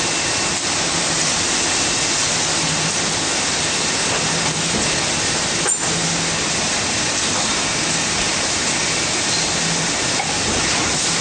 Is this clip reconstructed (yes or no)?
no